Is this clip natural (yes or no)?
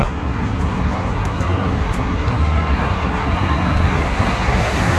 no